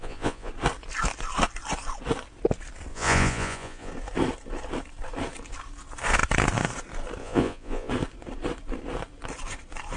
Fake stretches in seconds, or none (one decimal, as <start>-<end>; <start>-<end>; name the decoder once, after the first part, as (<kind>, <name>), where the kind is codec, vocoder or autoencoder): 0.0-0.5 (vocoder, Vocos); 2.9-3.9; 7.2-7.9

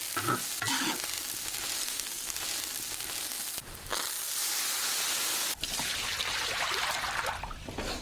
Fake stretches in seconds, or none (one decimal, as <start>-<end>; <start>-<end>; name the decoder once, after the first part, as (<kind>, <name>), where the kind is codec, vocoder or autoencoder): 1.8-2.4 (codec, SNAC)

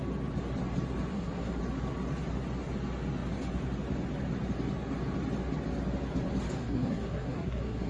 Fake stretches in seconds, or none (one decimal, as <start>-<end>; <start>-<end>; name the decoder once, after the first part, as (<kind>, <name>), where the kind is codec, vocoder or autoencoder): 1.1-1.6 (codec, SNAC); 6.6-7.9

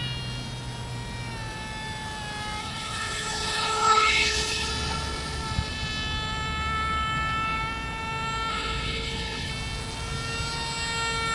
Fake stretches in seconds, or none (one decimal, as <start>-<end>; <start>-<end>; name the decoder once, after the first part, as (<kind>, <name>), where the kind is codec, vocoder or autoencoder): 2.6-4.7 (codec, HILCodec); 8.5-9.5